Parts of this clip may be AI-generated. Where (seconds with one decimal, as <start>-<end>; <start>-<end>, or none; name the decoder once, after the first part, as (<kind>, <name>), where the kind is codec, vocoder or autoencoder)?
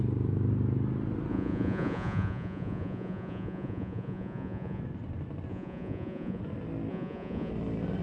1.3-4.8 (vocoder, Vocos); 5.5-6.4; 6.9-7.5